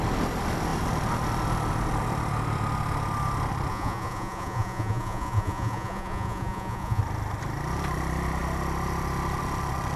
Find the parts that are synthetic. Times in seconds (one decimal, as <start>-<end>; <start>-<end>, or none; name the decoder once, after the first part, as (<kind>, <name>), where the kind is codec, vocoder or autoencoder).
3.7-7.0 (vocoder, Vocos)